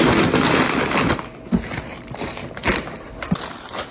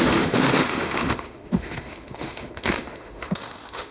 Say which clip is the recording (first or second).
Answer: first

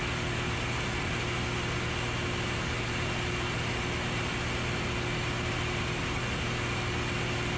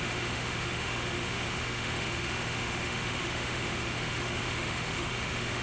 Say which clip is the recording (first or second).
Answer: first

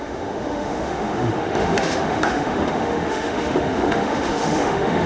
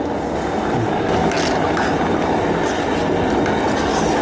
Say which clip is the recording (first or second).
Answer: second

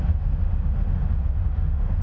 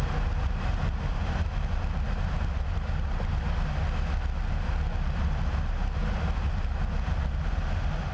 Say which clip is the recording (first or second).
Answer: second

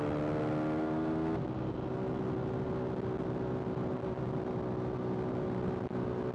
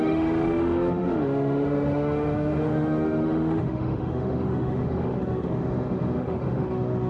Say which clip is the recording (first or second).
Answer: first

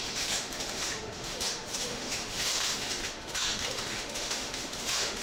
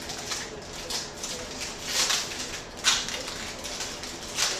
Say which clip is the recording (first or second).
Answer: second